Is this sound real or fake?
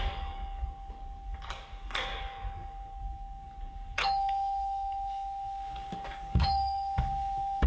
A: fake